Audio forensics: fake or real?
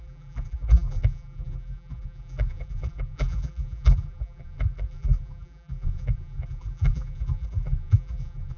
fake